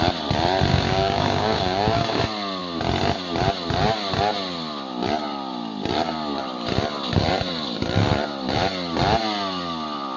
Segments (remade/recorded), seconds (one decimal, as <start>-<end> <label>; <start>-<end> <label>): 0.0-0.7 recorded; 0.7-2.2 remade; 2.2-10.2 recorded